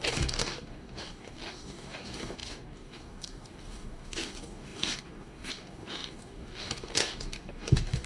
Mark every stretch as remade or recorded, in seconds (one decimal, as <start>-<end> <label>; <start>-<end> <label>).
0.0-8.1 remade